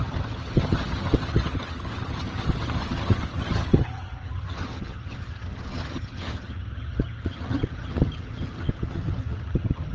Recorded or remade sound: remade